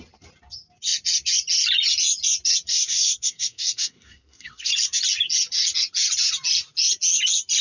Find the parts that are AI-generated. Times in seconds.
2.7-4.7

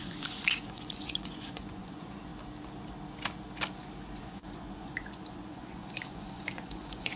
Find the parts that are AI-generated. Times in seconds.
0.0-2.3; 4.2-7.2

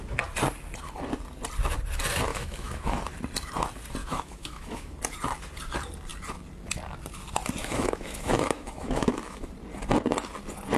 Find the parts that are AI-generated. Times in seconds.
2.3-3.0; 4.0-4.9; 7.6-9.5

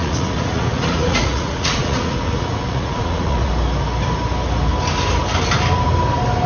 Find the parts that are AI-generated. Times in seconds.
0.0-3.5

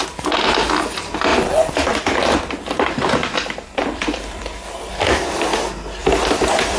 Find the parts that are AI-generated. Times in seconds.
1.3-4.9; 6.0-6.8

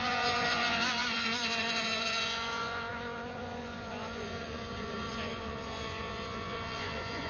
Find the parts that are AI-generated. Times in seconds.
0.0-7.3